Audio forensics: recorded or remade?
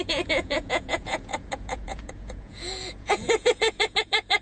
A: remade